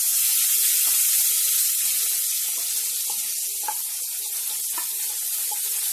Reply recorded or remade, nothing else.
recorded